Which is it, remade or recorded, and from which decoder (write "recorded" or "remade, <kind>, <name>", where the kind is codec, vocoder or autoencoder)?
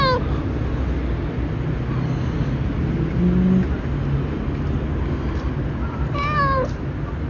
recorded